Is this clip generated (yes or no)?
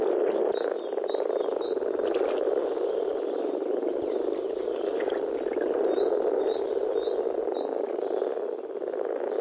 no